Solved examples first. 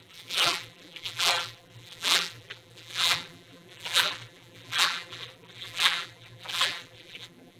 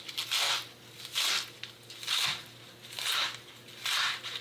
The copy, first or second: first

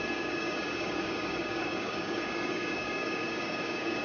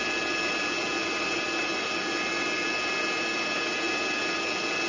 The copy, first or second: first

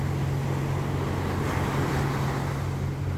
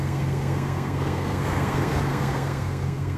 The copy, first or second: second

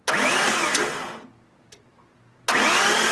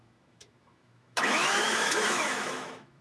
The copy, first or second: second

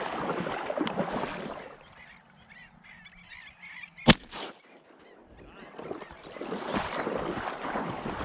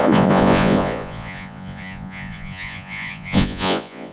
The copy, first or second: second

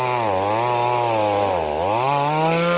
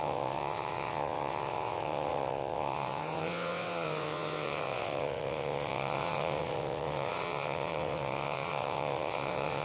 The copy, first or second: second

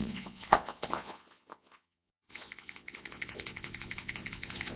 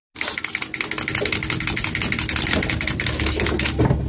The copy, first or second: first